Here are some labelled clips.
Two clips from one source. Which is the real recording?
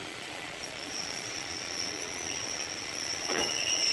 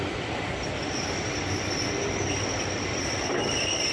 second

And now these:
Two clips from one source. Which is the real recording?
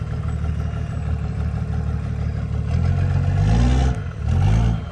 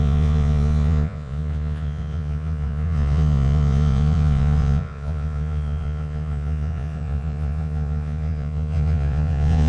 first